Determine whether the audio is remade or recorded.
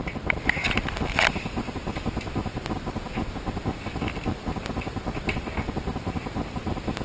recorded